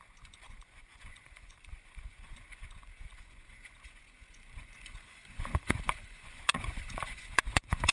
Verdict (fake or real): fake